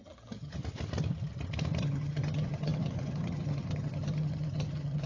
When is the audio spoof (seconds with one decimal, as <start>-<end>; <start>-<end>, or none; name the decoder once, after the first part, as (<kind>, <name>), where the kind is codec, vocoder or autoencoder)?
0.0-0.6 (vocoder, HiFi-GAN); 1.8-5.1